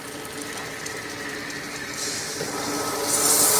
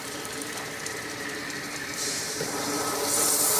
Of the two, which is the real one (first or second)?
first